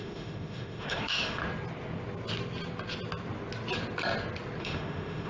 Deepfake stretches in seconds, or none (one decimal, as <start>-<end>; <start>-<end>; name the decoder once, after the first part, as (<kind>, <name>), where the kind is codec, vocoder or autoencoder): 0.0-1.4 (autoencoder, DAC-VAE); 4.6-5.3